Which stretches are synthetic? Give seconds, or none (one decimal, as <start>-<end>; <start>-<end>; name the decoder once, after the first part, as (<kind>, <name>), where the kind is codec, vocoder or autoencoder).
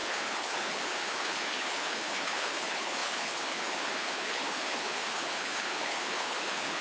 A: 0.0-6.8 (codec, HILCodec)